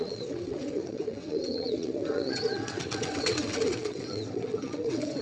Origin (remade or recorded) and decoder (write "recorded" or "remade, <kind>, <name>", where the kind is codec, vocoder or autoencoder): remade, vocoder, WaveNeXt